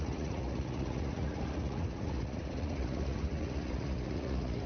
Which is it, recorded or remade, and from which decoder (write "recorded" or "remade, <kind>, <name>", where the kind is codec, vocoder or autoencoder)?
remade, vocoder, Vocos